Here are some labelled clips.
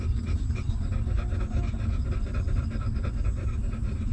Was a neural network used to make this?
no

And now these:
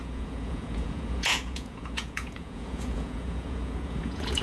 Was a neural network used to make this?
yes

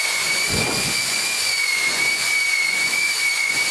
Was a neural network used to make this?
yes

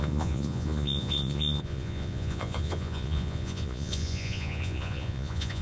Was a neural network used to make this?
yes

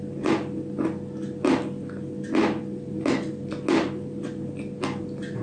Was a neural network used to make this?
no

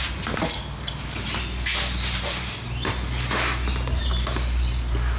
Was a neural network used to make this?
no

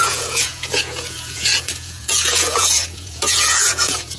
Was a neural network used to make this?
yes